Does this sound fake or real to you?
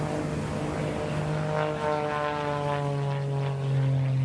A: real